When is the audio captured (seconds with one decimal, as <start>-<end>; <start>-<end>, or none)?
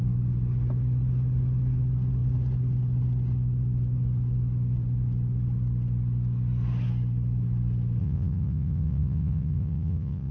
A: 0.0-8.0